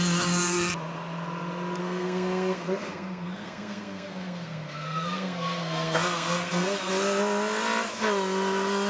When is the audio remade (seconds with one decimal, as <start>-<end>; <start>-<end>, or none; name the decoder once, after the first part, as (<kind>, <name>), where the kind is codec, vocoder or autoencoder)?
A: 1.8-6.9 (codec, SNAC)